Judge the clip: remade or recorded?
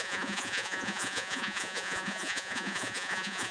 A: remade